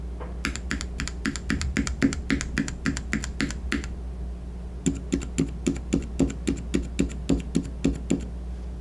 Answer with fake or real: real